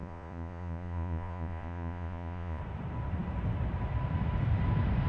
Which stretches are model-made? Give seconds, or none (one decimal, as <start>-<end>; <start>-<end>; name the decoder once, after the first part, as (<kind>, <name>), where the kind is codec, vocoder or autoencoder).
0.0-2.6 (vocoder, Vocos)